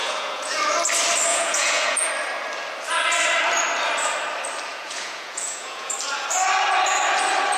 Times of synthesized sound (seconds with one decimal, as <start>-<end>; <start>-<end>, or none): 0.0-0.6; 1.3-2.1; 4.7-5.9